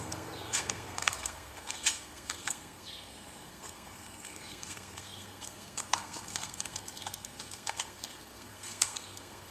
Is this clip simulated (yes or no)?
yes